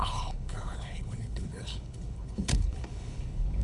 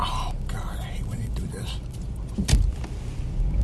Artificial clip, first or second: first